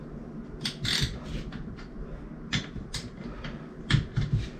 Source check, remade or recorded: recorded